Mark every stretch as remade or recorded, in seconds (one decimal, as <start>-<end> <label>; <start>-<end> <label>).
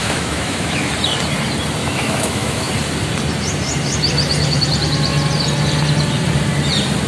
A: 0.0-0.9 remade; 0.9-1.8 recorded; 1.8-2.7 remade; 2.7-7.1 recorded